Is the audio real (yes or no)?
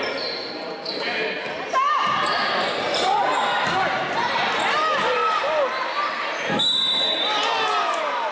yes